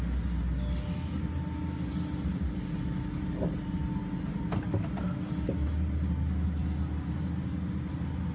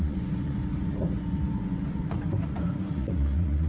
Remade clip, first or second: second